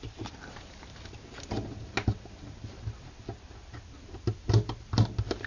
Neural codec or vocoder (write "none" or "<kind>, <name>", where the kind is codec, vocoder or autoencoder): none